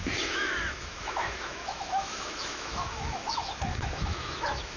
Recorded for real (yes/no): no